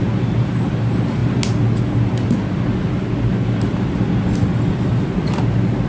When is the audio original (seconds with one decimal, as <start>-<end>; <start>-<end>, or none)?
0.0-5.9